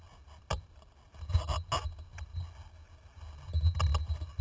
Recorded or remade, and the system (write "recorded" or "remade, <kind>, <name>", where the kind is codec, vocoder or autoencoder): recorded